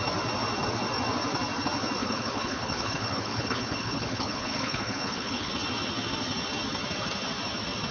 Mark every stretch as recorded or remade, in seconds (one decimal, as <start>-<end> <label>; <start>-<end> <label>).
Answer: 0.0-2.0 recorded; 2.0-5.5 remade; 5.5-7.9 recorded